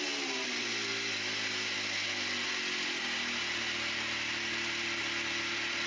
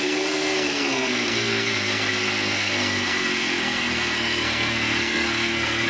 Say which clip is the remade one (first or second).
second